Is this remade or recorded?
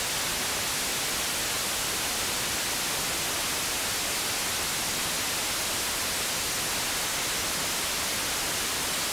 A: recorded